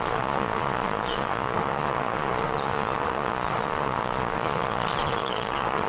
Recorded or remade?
remade